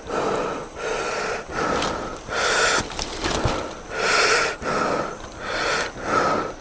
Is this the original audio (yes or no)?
yes